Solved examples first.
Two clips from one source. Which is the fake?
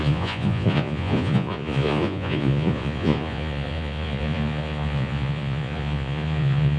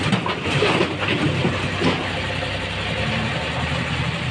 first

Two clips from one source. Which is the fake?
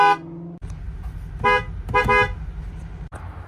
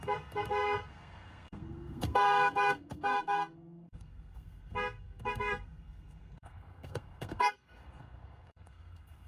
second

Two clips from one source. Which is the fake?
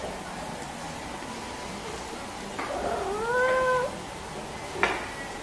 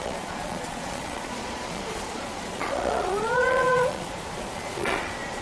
second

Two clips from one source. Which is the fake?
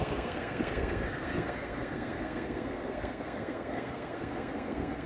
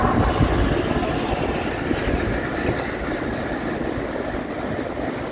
first